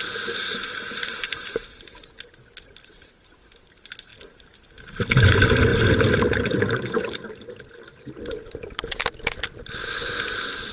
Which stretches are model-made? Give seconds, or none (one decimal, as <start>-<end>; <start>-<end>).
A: none